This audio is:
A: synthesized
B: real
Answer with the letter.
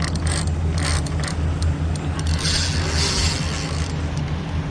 B